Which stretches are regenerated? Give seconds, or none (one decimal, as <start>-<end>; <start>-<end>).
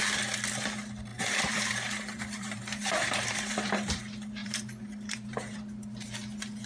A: 1.1-4.0; 4.4-5.6